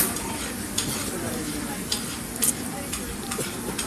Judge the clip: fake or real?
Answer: fake